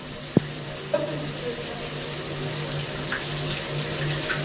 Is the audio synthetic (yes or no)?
no